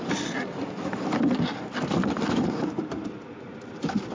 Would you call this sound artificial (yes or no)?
yes